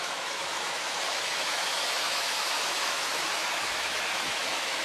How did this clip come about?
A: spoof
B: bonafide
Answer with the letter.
A